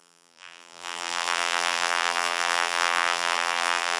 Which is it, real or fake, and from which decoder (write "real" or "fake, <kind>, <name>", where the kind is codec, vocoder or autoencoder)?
fake, vocoder, BigVGAN v2